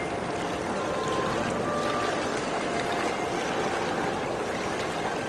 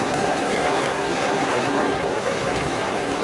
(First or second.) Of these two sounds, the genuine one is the first